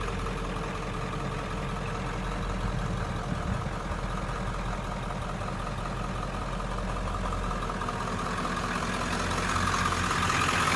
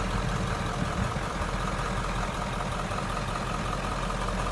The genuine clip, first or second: first